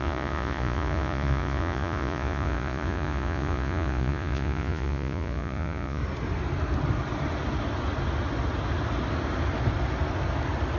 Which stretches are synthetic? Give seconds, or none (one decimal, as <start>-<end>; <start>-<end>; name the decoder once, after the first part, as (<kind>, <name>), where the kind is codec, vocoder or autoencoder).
0.0-6.0 (vocoder, Vocos)